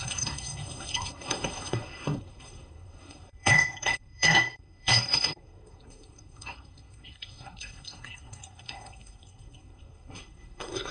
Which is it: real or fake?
fake